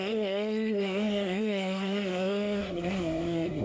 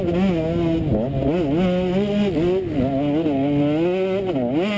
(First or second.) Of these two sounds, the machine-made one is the first